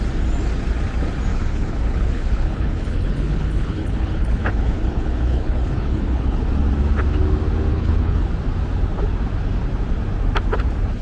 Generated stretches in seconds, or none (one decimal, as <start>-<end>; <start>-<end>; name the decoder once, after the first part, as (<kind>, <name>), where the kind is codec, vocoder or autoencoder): 1.3-6.5 (codec, HILCodec); 7.7-8.3